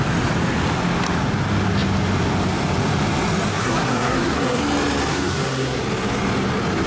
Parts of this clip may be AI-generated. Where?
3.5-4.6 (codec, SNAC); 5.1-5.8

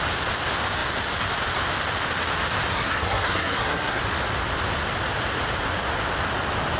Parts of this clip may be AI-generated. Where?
2.7-4.0 (codec, SNAC)

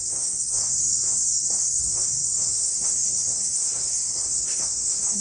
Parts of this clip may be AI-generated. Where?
0.0-5.2 (codec, SNAC)